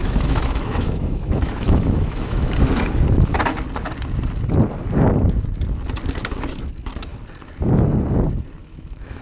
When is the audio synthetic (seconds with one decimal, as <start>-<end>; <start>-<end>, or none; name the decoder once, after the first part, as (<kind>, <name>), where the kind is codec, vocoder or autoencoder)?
0.0-2.5 (autoencoder, DAC-VAE); 8.6-9.2